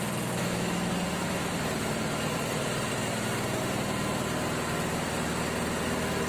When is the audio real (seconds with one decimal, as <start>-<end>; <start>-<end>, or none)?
0.0-0.4; 0.9-6.3